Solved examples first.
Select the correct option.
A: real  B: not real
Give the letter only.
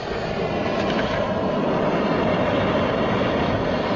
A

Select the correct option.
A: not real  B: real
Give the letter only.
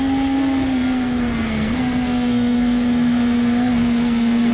A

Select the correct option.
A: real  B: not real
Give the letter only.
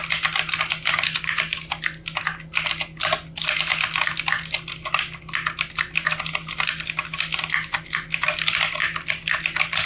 A